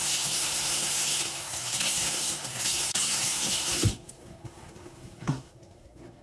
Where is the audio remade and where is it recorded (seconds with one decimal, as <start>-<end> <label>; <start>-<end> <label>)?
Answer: 0.0-6.2 remade